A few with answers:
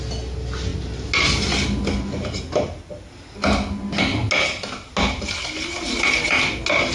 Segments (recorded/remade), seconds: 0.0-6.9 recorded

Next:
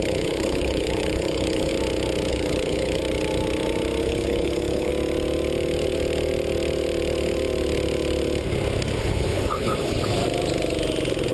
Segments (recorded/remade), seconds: 0.0-1.7 remade; 1.7-2.3 recorded; 2.3-3.0 remade; 3.0-4.0 recorded; 4.0-4.9 remade; 4.9-9.0 recorded; 9.0-10.2 remade; 10.2-11.3 recorded

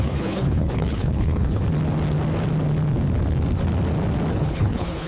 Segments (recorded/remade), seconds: 0.0-1.6 remade; 1.6-4.3 recorded; 4.3-5.1 remade

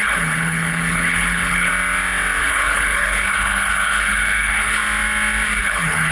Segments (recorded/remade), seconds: 0.0-1.7 remade; 1.7-2.4 recorded; 2.4-4.8 remade; 4.8-5.6 recorded; 5.6-6.1 remade

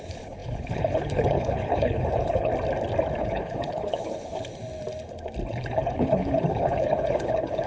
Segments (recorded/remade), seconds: 0.0-2.5 remade; 2.5-3.2 recorded; 3.2-4.5 remade; 4.5-5.5 recorded; 5.5-7.7 remade